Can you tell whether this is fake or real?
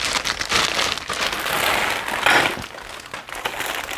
real